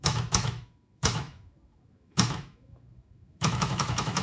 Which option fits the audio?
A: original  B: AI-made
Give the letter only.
B